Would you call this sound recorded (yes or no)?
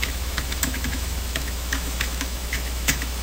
no